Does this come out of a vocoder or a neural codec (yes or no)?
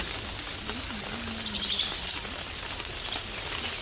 no